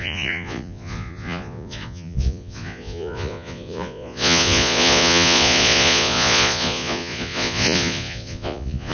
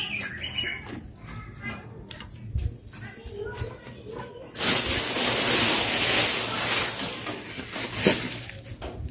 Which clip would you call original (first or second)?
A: second